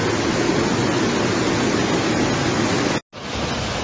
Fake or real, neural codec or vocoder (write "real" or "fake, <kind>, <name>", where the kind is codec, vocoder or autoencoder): real